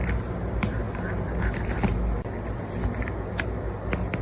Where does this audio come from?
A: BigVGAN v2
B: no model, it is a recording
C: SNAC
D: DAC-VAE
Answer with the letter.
B